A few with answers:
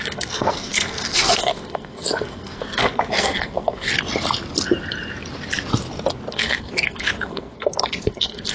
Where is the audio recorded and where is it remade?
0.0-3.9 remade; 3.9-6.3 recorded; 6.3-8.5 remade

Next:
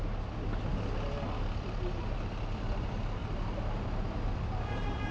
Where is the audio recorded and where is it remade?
0.0-5.1 recorded

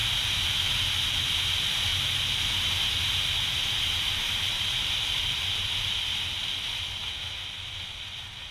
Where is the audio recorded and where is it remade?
0.0-1.9 recorded; 1.9-6.0 remade; 6.0-8.5 recorded

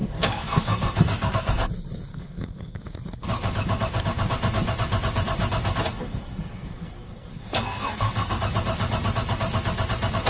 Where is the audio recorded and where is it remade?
0.0-1.7 remade; 1.7-2.1 recorded; 2.1-2.8 remade; 2.8-5.9 recorded; 5.9-8.4 remade; 8.4-10.3 recorded

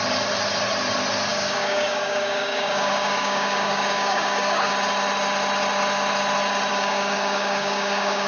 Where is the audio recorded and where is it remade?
0.0-1.3 recorded; 1.3-4.7 remade; 4.7-6.7 recorded; 6.7-8.3 remade

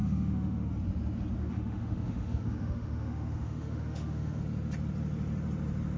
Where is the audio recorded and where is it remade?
0.0-0.7 remade; 0.7-1.4 recorded; 1.4-4.4 remade; 4.4-6.0 recorded

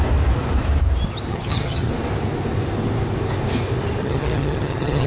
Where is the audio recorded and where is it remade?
0.0-1.3 recorded; 1.3-1.9 remade; 1.9-4.0 recorded; 4.0-5.1 remade